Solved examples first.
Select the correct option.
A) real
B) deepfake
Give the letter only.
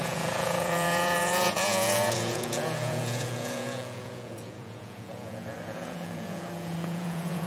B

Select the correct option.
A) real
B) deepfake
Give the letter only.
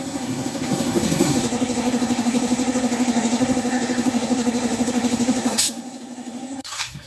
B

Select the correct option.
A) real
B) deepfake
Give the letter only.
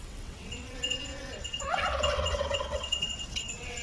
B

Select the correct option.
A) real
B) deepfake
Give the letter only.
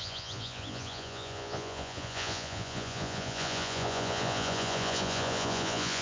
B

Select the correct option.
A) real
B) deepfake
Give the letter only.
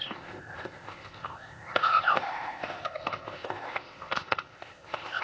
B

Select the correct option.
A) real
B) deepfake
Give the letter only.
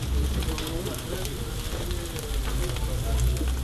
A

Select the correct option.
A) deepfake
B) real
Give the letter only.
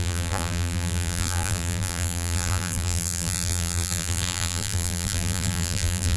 A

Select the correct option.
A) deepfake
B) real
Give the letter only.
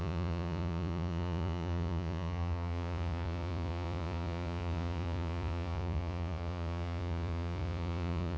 A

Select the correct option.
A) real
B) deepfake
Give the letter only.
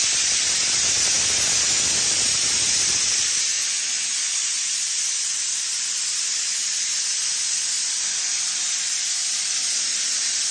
A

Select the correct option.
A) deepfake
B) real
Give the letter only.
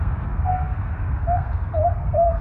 A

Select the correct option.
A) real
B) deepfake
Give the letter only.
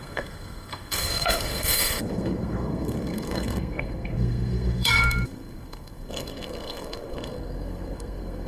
B